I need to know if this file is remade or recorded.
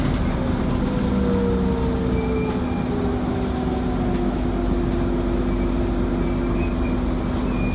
recorded